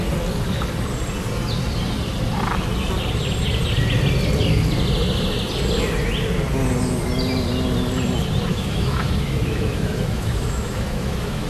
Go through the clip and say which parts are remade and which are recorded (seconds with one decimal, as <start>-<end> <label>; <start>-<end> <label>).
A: 0.0-8.5 recorded; 8.5-11.5 remade